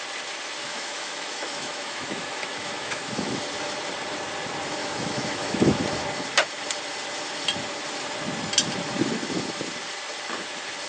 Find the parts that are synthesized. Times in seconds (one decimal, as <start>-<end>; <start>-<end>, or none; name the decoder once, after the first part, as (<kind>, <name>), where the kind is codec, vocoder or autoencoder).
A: 0.6-3.4 (autoencoder, DAC-VAE); 4.8-5.8